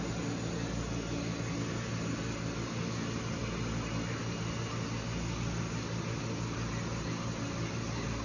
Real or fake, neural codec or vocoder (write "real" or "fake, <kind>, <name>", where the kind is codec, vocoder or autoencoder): real